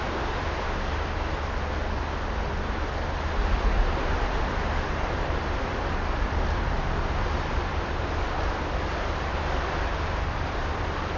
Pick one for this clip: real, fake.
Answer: real